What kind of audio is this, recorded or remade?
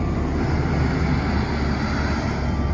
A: recorded